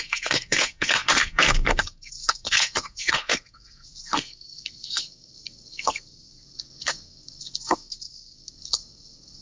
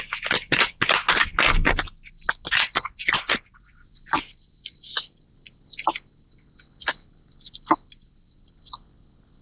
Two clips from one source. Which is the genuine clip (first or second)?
second